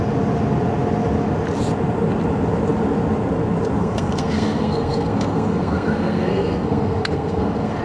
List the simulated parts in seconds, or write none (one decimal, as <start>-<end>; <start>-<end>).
3.8-7.8